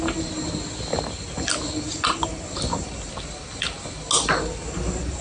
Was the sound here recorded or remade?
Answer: recorded